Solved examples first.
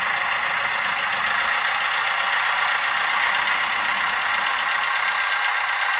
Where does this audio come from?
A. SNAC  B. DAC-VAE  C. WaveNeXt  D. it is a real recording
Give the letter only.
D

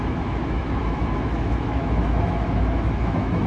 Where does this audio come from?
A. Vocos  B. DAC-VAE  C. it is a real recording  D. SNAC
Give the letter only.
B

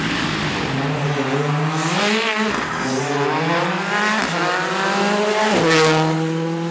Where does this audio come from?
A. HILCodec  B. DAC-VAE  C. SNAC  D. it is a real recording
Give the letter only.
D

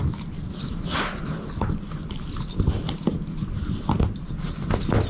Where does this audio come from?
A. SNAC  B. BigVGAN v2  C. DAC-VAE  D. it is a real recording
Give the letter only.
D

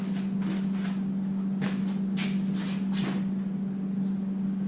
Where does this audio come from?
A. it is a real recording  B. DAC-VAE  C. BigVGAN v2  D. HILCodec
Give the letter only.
A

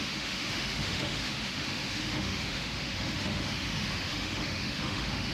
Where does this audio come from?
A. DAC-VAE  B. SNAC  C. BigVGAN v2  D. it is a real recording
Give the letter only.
A